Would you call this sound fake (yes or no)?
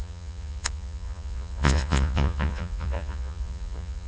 yes